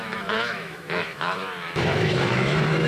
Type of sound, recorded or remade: remade